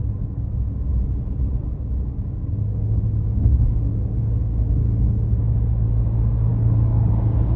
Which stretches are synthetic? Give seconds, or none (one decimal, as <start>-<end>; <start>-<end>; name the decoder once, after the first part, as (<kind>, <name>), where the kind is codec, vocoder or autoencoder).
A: 0.0-0.9 (codec, DAC); 1.7-7.6